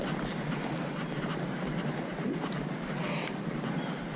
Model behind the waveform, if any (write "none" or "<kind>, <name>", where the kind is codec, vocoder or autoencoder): none